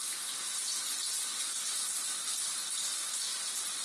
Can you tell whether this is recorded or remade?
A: recorded